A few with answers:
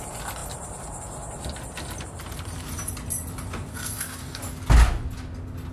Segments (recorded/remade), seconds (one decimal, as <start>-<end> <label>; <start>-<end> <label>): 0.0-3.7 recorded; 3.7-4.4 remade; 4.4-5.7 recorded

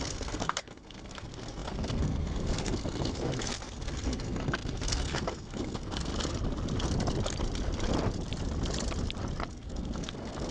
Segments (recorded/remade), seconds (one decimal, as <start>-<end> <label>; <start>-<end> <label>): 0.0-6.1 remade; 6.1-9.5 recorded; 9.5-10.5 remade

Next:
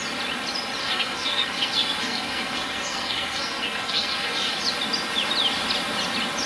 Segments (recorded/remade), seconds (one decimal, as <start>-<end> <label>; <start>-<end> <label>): 0.0-0.8 recorded; 0.8-4.6 remade; 4.6-6.5 recorded